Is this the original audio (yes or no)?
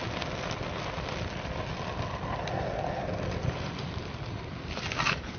yes